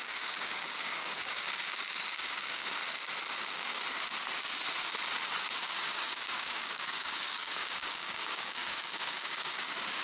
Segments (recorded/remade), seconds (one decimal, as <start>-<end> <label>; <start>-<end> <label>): 0.0-2.8 remade; 2.8-3.3 recorded; 3.3-3.8 remade; 3.8-5.4 recorded; 5.4-10.0 remade